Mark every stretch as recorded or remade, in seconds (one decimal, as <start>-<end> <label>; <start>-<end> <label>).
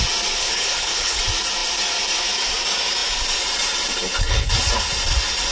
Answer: 0.0-0.4 recorded; 0.4-1.2 remade; 1.2-5.5 recorded